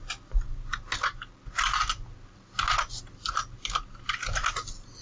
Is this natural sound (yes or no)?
yes